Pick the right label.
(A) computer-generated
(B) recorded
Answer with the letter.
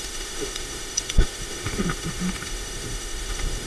A